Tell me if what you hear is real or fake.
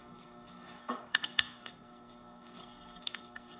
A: fake